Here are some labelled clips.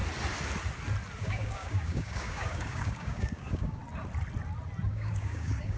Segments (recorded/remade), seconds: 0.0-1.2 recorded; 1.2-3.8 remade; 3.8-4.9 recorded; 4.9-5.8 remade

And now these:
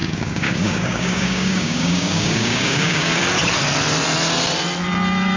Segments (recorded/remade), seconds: 0.0-3.2 remade; 3.2-5.4 recorded

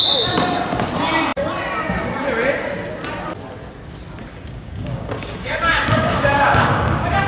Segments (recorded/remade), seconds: 0.0-4.3 recorded; 4.3-7.3 remade

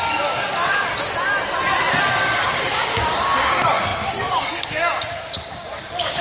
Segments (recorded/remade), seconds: 0.0-0.9 remade; 0.9-2.0 recorded; 2.0-6.2 remade

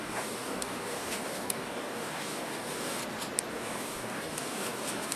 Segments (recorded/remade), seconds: 0.0-3.0 remade; 3.0-3.5 recorded; 3.5-5.2 remade